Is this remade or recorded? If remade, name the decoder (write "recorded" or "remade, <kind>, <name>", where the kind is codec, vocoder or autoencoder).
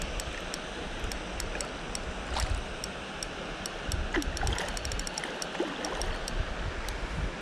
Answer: recorded